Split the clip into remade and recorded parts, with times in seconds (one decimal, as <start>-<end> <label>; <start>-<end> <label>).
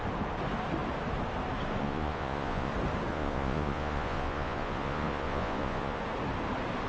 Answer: 0.0-1.8 recorded; 1.8-2.7 remade; 2.7-3.1 recorded; 3.1-6.0 remade; 6.0-6.9 recorded